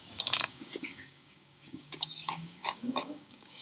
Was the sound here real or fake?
fake